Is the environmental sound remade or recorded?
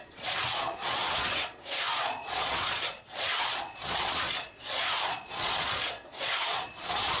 remade